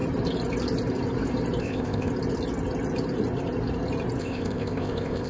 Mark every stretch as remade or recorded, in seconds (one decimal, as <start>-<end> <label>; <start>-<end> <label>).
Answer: 0.0-1.6 recorded; 1.6-2.1 remade; 2.1-4.2 recorded; 4.2-5.3 remade